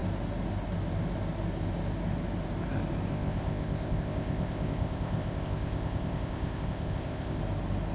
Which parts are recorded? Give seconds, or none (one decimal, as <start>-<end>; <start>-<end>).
0.0-3.1; 7.4-7.9